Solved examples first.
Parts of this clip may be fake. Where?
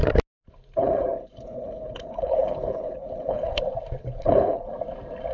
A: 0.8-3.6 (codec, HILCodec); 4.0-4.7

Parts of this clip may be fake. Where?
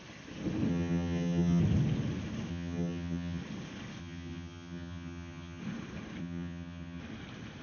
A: 0.7-1.6 (vocoder, HiFi-GAN); 2.5-3.4; 4.0-5.6; 6.2-7.0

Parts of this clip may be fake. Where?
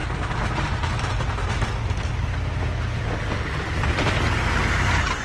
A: none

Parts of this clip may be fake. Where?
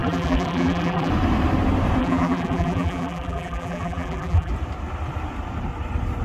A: 0.0-1.1 (vocoder, BigVGAN v2); 2.0-4.5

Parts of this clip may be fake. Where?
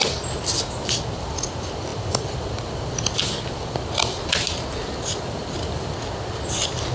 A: none